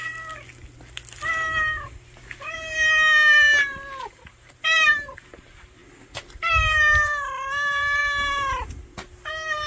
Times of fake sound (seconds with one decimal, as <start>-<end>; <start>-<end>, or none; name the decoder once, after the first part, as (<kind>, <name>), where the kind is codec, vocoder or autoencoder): 4.0-5.8 (vocoder, BigVGAN v2); 6.5-8.0